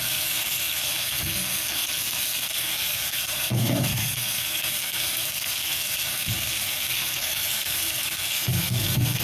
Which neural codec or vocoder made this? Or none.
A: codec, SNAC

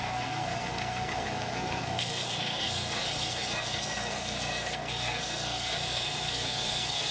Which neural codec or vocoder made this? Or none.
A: codec, SNAC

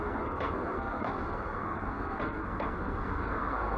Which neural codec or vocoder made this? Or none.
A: codec, SNAC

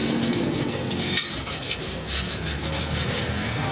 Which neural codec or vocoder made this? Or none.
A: codec, SNAC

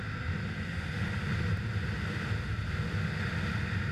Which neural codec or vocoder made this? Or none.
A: none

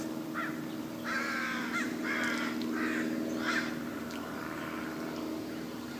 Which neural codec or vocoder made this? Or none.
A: none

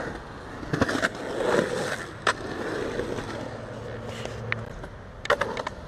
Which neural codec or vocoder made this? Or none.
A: none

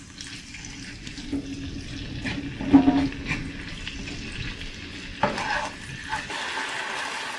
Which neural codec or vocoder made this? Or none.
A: none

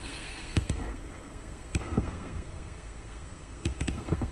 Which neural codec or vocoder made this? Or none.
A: codec, SNAC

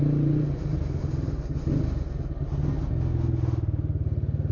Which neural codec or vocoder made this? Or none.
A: none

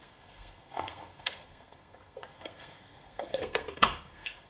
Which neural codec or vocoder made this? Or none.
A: codec, SNAC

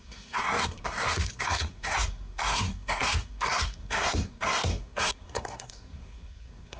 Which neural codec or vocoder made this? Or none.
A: codec, SNAC